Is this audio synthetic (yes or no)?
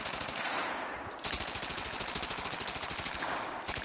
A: no